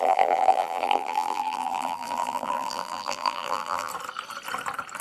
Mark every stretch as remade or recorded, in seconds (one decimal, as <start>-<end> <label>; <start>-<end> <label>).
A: 0.0-3.9 remade; 3.9-5.0 recorded